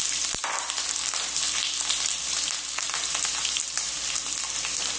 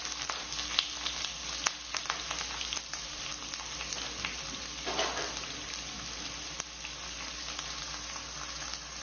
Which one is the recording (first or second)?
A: second